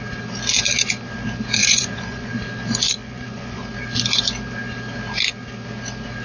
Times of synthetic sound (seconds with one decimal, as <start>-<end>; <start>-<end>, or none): 1.6-2.3; 3.0-3.6